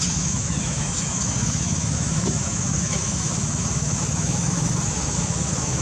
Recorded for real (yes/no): no